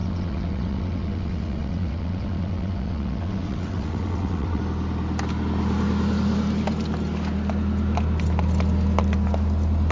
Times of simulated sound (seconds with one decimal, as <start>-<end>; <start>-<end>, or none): 0.0-4.6

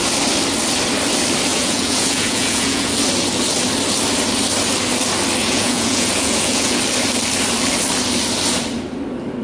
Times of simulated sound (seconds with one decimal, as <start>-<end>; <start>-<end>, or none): 1.5-2.9; 5.4-6.8

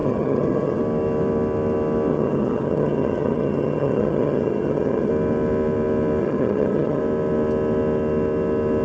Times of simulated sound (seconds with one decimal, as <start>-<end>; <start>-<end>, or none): 0.0-0.8; 2.1-5.1; 6.2-7.0

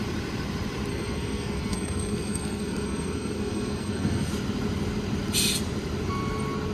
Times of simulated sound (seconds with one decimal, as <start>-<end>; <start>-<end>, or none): 0.9-4.3

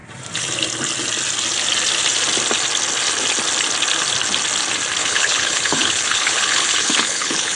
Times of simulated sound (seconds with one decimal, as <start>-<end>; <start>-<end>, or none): 5.0-7.6

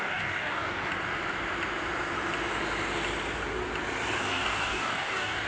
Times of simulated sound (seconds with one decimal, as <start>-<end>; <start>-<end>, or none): 0.0-0.9; 4.2-5.5

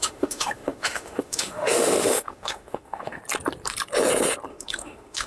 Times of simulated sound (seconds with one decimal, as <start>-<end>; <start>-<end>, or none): 0.0-3.2; 4.5-5.3